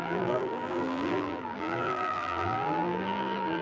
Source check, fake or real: fake